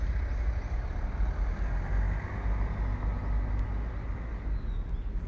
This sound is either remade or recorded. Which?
recorded